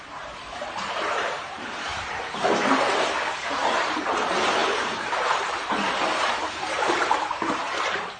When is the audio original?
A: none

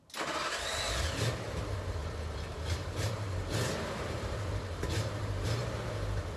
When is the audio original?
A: 0.0-2.0; 5.8-6.4

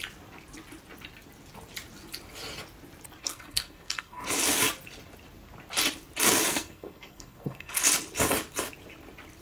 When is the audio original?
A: 0.0-3.2; 4.2-6.5; 7.8-9.4

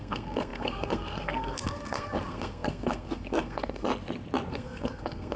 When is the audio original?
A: 3.9-4.5

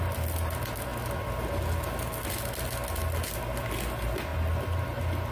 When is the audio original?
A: 0.0-5.3

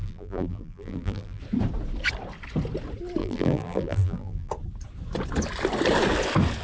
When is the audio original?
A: 1.4-3.2; 4.5-6.6

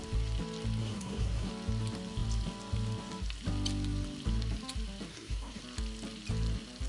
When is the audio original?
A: 0.0-0.8; 1.5-5.1; 5.6-6.9